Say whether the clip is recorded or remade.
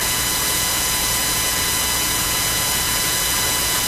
remade